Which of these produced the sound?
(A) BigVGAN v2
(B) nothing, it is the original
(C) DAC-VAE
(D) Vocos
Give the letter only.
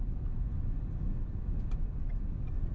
B